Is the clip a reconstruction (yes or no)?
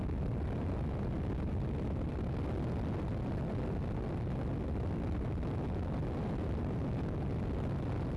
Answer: no